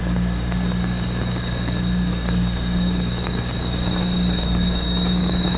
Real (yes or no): no